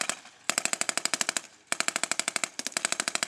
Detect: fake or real real